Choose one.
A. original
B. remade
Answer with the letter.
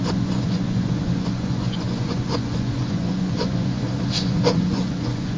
B